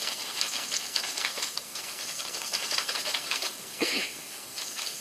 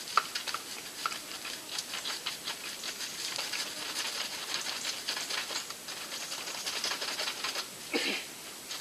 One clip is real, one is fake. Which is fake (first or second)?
first